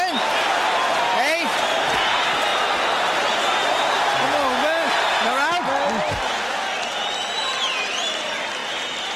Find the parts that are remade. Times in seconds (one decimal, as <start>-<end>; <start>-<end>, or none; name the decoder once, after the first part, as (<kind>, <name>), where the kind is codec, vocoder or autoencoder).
none